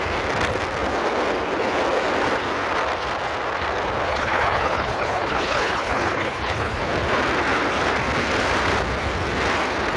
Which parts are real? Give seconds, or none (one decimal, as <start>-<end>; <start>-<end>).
0.0-4.1; 6.8-10.0